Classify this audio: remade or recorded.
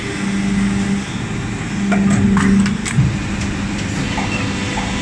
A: recorded